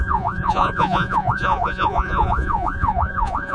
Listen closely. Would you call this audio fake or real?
fake